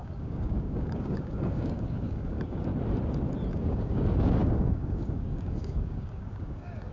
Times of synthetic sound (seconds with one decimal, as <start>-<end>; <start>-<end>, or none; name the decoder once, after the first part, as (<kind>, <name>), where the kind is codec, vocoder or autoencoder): 0.0-2.7 (codec, DAC); 3.5-6.9